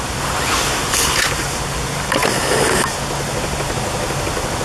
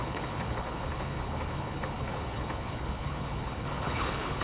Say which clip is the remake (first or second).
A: second